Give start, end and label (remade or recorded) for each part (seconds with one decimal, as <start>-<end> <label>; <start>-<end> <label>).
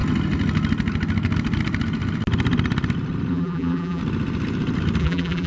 0.0-3.3 recorded; 3.3-4.0 remade; 4.0-5.0 recorded; 5.0-5.5 remade